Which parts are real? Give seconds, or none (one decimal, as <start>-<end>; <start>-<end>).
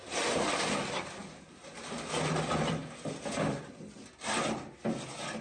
0.0-5.4